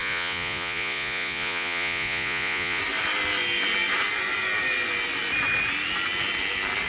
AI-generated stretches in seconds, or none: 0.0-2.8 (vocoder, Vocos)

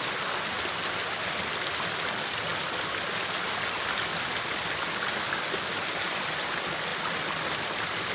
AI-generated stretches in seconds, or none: none

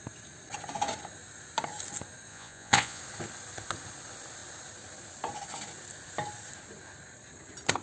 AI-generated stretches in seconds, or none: 2.3-3.0 (vocoder, Vocos)

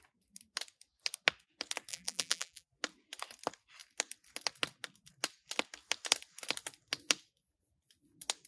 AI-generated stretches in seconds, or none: 1.9-2.8 (vocoder, BigVGAN v2)

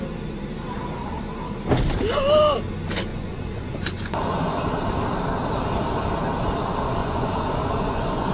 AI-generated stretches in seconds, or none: 3.1-4.6 (vocoder, Vocos); 7.0-8.3

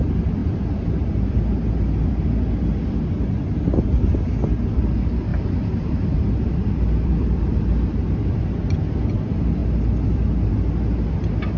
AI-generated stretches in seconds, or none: 0.4-1.7 (vocoder, BigVGAN v2); 5.3-8.5; 9.6-10.5